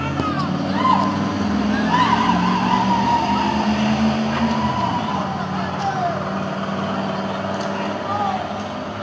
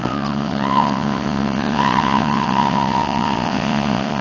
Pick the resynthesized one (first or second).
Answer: second